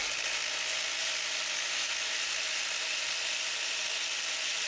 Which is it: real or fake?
real